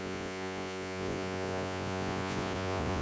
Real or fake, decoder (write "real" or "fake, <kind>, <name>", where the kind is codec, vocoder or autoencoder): fake, vocoder, Vocos